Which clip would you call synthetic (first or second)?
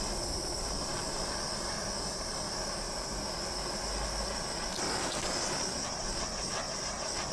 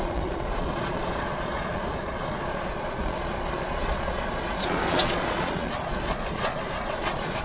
second